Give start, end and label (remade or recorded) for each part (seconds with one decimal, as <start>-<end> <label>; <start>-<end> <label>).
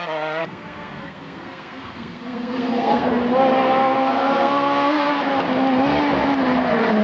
0.0-0.4 recorded; 0.4-3.1 remade; 3.1-3.8 recorded; 3.8-5.1 remade; 5.1-7.0 recorded